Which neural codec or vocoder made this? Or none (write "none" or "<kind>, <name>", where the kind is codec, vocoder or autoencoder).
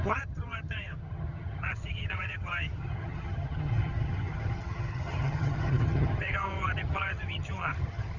vocoder, HiFi-GAN